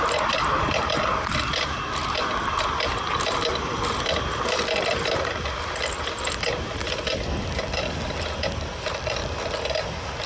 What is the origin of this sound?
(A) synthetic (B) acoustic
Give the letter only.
B